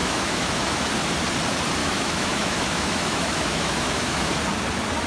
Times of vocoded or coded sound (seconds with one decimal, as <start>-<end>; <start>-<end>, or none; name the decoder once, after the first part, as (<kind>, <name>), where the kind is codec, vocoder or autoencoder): 0.0-0.9 (autoencoder, DAC-VAE); 1.8-4.3